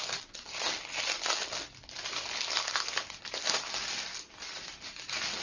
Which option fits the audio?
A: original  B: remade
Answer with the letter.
A